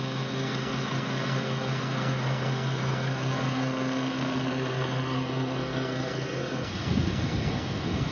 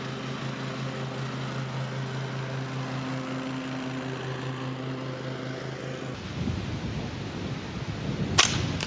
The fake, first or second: first